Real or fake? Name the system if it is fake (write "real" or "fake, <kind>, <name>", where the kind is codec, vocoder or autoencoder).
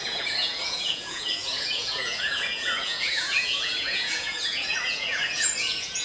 fake, vocoder, Vocos